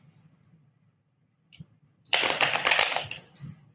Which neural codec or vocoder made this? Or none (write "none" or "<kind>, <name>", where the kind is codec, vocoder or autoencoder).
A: vocoder, BigVGAN v2